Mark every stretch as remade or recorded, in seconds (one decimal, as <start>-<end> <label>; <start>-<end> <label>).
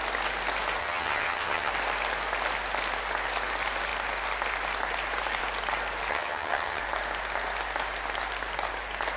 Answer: 0.0-0.8 recorded; 0.8-1.7 remade; 1.7-6.1 recorded; 6.1-6.8 remade; 6.8-9.2 recorded